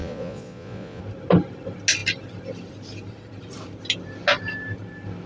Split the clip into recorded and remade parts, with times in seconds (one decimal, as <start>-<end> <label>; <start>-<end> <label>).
0.0-1.0 remade; 1.0-5.3 recorded